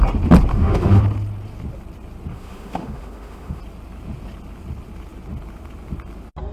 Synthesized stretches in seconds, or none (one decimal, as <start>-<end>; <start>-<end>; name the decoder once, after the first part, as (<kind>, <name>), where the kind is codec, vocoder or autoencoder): 0.5-1.0 (autoencoder, DAC-VAE); 2.3-3.6